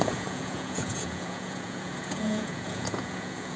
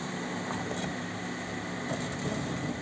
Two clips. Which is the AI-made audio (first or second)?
first